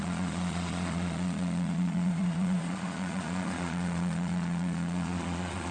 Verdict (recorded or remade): remade